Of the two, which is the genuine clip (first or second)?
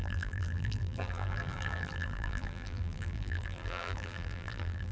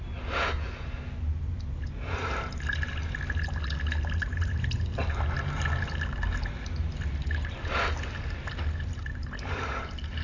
second